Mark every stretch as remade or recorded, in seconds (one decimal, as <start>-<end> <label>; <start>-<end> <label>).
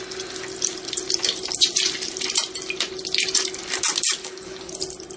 0.0-4.2 recorded; 4.2-4.7 remade; 4.7-5.2 recorded